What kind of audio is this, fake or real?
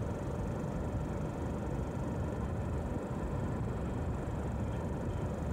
fake